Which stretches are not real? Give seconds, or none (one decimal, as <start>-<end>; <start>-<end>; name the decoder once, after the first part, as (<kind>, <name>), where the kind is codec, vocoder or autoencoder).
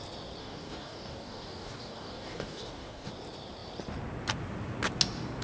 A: 0.4-3.1 (codec, DAC)